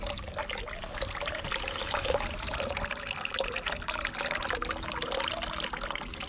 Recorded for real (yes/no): yes